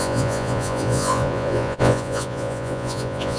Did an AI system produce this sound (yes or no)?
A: yes